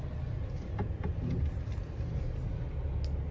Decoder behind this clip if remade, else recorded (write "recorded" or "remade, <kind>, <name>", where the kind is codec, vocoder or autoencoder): recorded